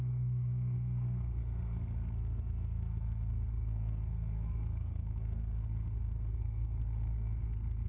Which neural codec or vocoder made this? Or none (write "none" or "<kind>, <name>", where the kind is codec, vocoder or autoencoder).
codec, SNAC